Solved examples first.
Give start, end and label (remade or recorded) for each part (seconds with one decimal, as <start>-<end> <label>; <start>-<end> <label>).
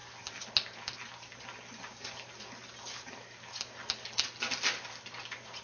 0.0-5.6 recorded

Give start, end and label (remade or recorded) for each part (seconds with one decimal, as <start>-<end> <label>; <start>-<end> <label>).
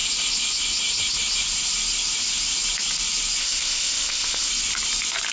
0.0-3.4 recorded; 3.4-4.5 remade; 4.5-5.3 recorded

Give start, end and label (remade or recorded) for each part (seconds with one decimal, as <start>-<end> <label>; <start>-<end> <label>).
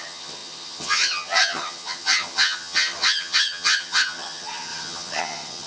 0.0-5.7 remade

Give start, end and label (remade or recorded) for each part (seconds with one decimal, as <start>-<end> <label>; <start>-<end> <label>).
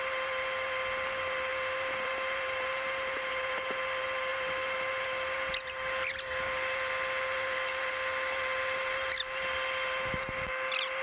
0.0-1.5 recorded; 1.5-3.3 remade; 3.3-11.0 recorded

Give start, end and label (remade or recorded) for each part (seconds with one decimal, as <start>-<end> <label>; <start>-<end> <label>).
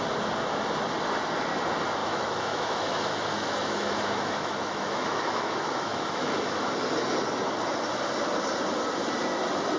0.0-2.0 recorded; 2.0-6.7 remade; 6.7-9.8 recorded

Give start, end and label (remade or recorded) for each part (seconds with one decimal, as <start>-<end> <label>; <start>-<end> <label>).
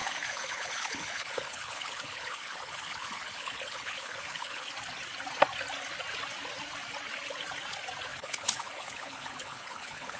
0.0-4.7 remade; 4.7-8.1 recorded; 8.1-10.2 remade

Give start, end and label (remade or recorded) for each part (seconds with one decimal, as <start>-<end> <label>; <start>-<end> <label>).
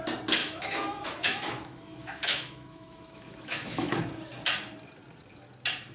0.0-0.4 recorded; 0.4-3.9 remade; 3.9-5.9 recorded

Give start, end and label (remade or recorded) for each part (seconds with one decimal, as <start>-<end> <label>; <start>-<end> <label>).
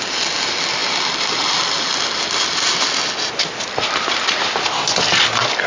0.0-5.7 recorded